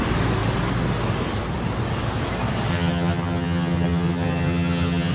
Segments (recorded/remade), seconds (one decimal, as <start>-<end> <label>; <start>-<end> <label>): 0.0-2.7 recorded; 2.7-5.1 remade